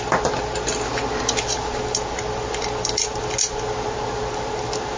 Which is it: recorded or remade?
recorded